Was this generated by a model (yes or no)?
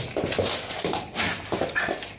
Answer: no